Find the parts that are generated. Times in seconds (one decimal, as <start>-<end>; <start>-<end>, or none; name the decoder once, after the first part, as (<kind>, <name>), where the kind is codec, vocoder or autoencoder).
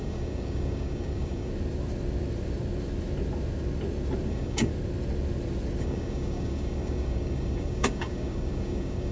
0.0-1.5 (codec, DAC); 4.3-4.7; 5.8-9.1